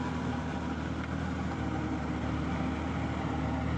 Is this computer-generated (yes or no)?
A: no